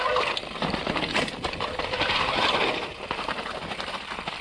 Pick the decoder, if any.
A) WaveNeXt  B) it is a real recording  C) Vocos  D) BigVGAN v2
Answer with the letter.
D